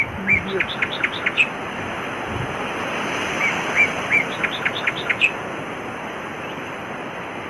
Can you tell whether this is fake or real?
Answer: real